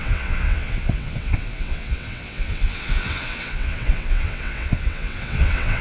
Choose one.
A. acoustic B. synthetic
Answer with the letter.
B